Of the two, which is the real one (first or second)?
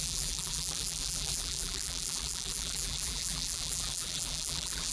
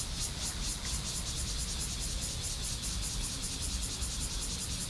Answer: second